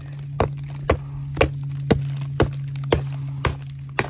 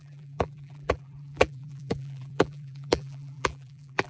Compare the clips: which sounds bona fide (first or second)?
first